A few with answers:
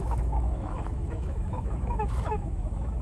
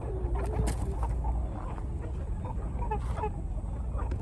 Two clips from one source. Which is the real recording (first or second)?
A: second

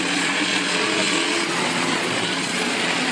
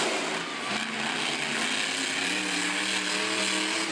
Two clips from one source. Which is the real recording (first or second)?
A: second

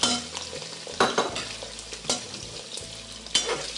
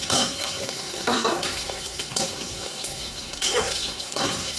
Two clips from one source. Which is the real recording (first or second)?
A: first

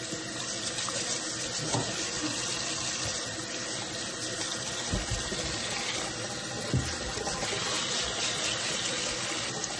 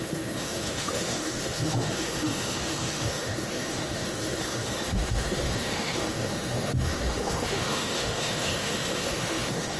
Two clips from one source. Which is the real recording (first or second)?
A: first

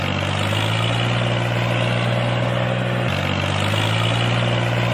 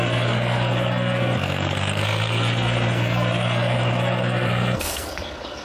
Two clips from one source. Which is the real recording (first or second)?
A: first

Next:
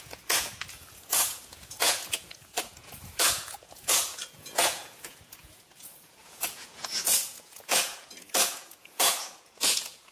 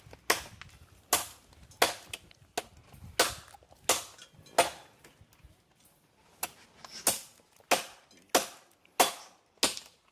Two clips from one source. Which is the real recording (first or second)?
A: second